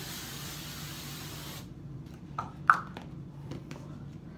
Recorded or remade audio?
remade